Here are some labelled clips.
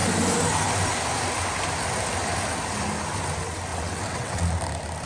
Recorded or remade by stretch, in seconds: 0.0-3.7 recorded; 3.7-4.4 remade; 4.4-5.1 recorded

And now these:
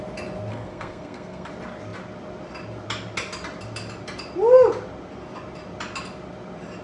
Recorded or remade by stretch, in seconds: 0.0-0.5 recorded; 0.5-1.5 remade; 1.5-6.8 recorded

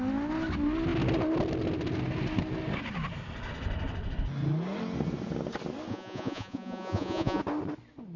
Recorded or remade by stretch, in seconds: 0.0-5.9 recorded; 5.9-7.4 remade; 7.4-8.2 recorded

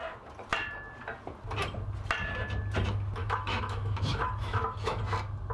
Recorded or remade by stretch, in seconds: 0.0-3.2 recorded; 3.2-5.0 remade; 5.0-5.5 recorded

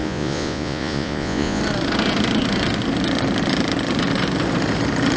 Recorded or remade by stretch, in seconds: 0.0-1.6 remade; 1.6-5.2 recorded